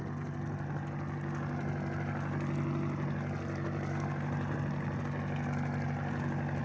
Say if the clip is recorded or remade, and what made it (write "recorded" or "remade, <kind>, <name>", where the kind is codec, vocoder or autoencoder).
recorded